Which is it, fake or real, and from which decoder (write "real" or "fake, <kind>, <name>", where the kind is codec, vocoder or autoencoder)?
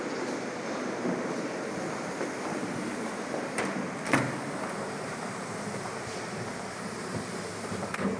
fake, vocoder, BigVGAN v2